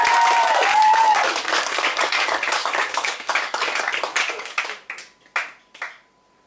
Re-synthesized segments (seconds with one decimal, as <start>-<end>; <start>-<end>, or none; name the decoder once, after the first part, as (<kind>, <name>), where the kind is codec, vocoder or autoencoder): 0.7-4.6 (codec, DAC)